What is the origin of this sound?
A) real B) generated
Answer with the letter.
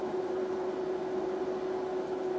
A